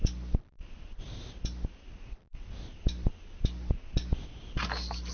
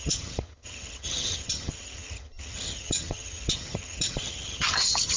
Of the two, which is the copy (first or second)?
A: second